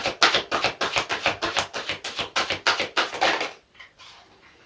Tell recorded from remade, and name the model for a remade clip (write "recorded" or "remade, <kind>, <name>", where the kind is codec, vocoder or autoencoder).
recorded